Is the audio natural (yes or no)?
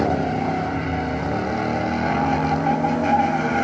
yes